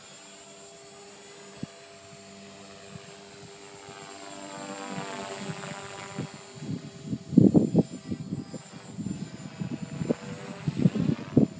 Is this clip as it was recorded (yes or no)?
yes